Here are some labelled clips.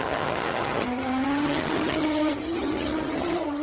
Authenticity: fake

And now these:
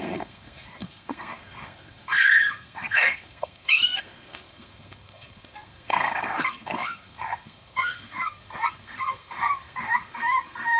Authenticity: fake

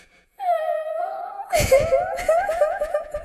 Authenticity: fake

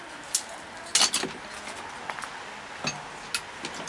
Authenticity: real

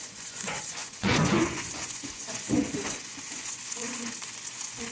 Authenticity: fake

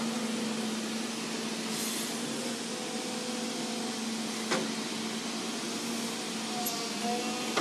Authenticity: real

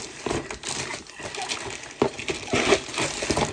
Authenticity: real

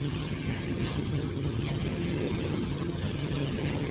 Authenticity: fake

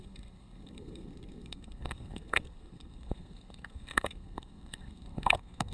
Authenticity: fake